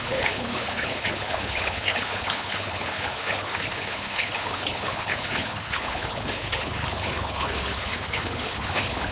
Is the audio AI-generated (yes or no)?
yes